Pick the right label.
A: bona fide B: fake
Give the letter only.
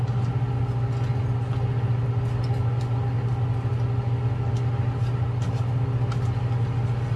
A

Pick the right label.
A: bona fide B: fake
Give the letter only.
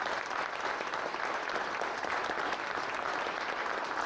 A